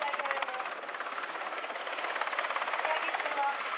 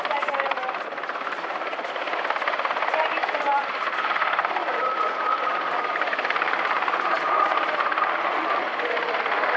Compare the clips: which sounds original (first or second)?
first